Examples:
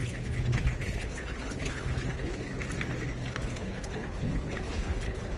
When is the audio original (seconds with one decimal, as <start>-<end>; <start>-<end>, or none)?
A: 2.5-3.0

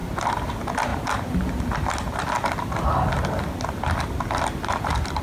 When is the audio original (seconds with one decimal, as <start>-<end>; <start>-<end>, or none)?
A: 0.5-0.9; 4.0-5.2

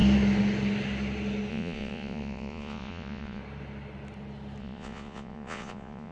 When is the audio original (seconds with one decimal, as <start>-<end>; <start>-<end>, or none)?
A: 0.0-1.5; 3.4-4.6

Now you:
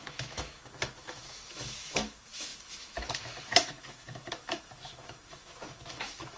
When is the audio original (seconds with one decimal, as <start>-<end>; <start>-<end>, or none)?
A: none

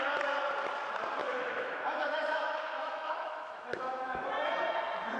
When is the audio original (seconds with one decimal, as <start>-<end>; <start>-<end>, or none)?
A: 0.0-1.2; 4.3-5.2

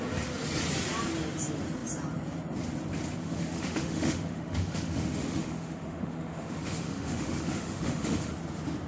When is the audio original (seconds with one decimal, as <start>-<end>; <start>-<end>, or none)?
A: 0.0-3.2; 8.3-8.9

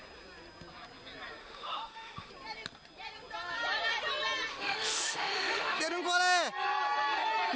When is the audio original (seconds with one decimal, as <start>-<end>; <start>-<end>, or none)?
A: 0.0-1.4; 2.3-4.5; 5.8-7.6

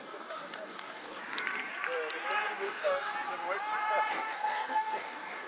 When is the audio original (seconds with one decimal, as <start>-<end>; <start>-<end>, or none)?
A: 1.2-2.6; 3.1-4.1